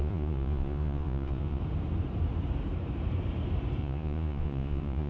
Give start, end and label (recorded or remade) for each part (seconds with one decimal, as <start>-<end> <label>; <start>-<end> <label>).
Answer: 0.0-1.6 remade; 1.6-3.8 recorded; 3.8-5.1 remade